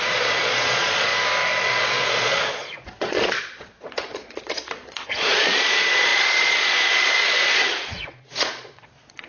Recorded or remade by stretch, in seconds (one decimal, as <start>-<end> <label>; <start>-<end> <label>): 0.0-1.1 remade; 1.1-1.6 recorded; 1.6-9.3 remade